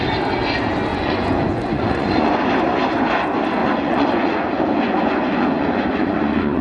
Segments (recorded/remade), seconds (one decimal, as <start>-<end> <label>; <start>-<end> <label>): 0.0-0.9 recorded; 0.9-2.4 remade; 2.4-3.6 recorded; 3.6-6.6 remade